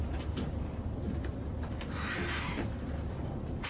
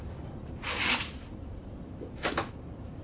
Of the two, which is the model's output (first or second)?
second